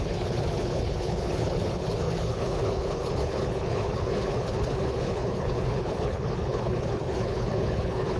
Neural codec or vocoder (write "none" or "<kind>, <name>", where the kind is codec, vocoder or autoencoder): codec, HILCodec